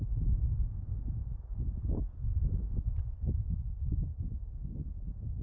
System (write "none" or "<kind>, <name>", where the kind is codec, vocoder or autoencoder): codec, DAC